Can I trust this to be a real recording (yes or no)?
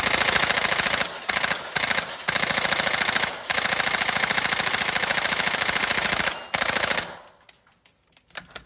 yes